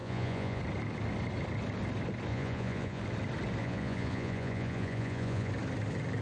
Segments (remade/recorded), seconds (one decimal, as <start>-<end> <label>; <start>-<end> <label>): 0.0-0.6 remade; 0.6-2.3 recorded; 2.3-3.0 remade; 3.0-3.6 recorded; 3.6-5.5 remade; 5.5-6.2 recorded